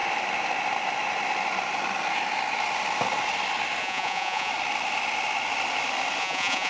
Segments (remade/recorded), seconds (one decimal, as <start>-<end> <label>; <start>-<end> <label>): 0.0-3.8 recorded; 3.8-4.5 remade; 4.5-6.2 recorded; 6.2-6.7 remade